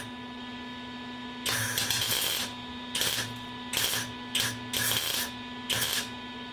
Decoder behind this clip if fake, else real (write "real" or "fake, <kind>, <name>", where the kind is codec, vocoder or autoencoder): real